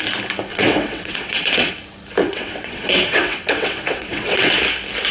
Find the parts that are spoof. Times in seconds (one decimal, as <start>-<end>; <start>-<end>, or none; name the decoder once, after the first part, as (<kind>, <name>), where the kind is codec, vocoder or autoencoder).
0.5-1.7 (vocoder, WaveNeXt); 2.2-4.5